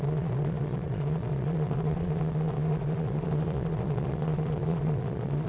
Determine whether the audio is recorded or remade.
remade